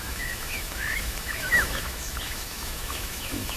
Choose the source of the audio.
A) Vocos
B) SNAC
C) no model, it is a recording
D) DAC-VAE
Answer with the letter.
D